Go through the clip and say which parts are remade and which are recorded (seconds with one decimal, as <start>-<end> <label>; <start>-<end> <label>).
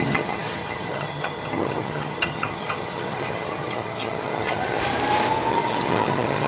0.0-4.8 remade; 4.8-5.5 recorded; 5.5-6.5 remade